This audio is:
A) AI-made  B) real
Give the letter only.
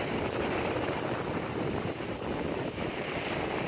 B